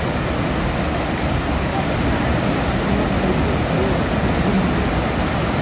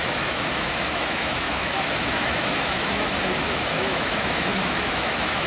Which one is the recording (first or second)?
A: first